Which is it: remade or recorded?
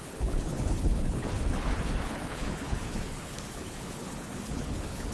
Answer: remade